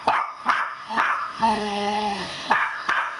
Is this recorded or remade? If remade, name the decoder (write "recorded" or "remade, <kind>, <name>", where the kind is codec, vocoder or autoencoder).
remade, codec, SNAC